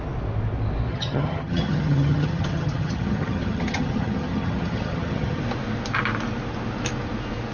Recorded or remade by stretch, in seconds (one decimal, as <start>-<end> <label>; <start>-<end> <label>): 0.0-0.9 recorded; 0.9-5.4 remade; 5.4-7.5 recorded